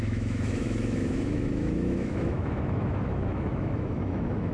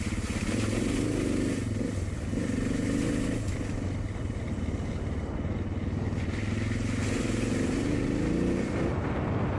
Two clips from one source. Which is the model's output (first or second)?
first